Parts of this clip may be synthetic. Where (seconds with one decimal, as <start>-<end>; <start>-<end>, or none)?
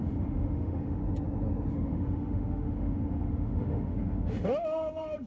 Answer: 0.0-1.0; 1.7-5.3